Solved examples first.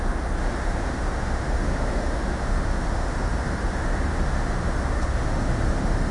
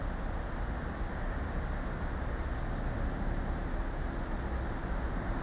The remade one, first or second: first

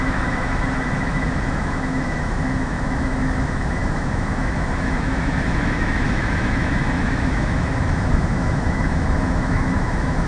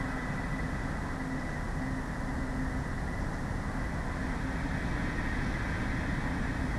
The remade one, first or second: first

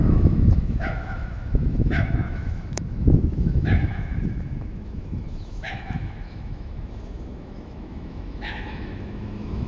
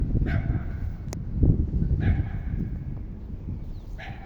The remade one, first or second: first